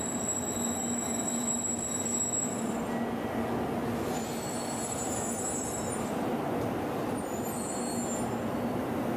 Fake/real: real